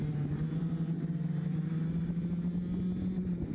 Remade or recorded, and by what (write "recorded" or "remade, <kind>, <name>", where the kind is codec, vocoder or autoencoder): recorded